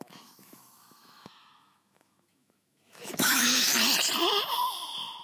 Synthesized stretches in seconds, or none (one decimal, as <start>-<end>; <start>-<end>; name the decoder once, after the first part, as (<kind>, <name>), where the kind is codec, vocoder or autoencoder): 0.0-3.7 (autoencoder, DAC-VAE)